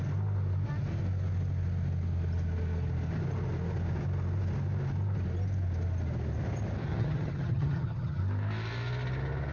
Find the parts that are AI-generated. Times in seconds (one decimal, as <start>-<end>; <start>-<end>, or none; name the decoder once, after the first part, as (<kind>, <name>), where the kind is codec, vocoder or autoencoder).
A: 6.9-8.2 (vocoder, HiFi-GAN)